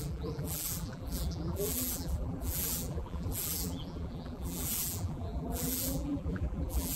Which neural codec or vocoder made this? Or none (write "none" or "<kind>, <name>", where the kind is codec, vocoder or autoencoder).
vocoder, BigVGAN v2